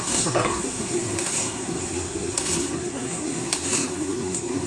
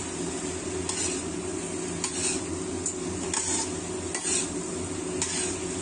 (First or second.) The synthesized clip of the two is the first